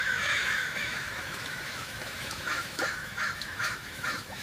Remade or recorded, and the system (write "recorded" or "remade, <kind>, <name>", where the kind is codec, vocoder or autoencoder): remade, autoencoder, DAC-VAE